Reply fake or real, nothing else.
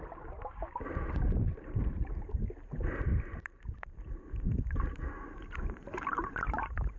fake